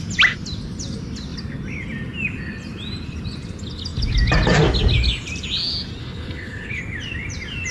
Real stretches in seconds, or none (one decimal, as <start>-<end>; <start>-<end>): 0.0-6.0; 6.8-7.7

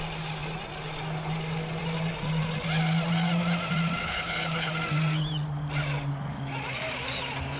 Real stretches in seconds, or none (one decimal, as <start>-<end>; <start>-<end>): 0.0-4.0; 4.7-7.6

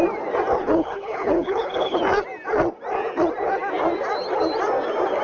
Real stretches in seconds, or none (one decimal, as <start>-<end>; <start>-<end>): 0.0-0.6; 2.0-5.2

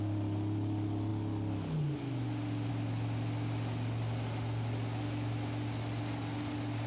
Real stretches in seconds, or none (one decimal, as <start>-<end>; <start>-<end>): 0.0-6.9